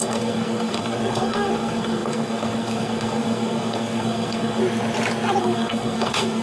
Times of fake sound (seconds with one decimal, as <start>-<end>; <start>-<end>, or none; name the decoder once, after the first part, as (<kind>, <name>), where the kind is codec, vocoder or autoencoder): 0.0-4.6 (codec, SNAC); 5.4-6.4